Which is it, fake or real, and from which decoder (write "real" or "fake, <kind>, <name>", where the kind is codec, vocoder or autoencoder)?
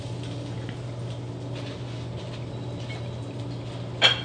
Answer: real